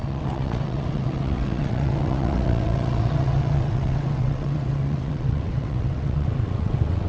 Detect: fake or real fake